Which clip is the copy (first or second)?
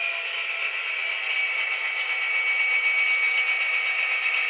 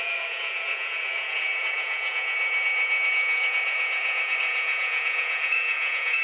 second